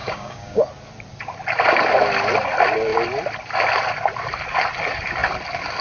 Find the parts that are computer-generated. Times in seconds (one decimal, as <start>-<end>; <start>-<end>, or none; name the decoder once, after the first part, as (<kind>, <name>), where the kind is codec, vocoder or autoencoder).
0.0-0.6 (codec, DAC)